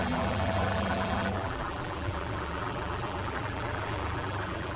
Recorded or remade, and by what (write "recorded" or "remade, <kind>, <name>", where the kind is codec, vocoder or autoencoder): remade, vocoder, BigVGAN v2